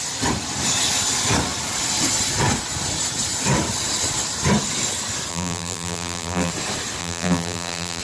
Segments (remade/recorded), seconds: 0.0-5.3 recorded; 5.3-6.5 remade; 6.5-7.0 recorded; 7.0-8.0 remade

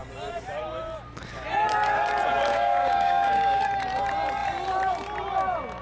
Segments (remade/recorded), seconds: 0.0-2.5 recorded; 2.5-3.6 remade; 3.6-5.8 recorded

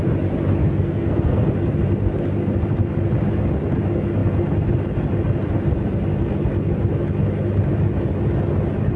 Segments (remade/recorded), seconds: 0.0-0.6 recorded; 0.6-1.5 remade; 1.5-9.0 recorded

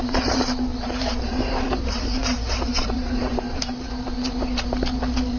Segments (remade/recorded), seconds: 0.0-0.7 recorded; 0.7-3.9 remade; 3.9-5.4 recorded